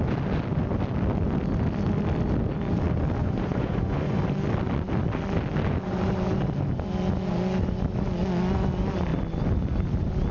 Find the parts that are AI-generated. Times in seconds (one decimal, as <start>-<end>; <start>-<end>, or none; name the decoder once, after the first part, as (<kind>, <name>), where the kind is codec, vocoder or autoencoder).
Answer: 3.2-4.2 (vocoder, Vocos)